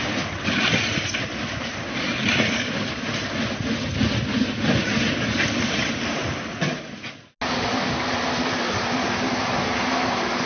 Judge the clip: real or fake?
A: real